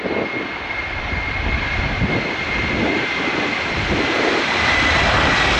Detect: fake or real real